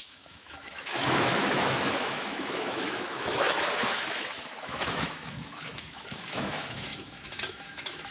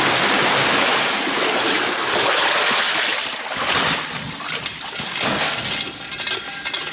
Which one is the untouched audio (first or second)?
second